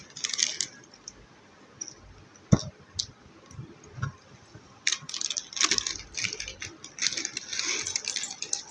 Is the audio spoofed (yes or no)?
no